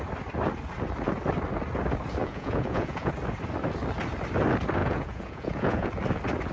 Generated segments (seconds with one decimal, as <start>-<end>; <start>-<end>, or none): 2.2-3.1; 4.8-5.9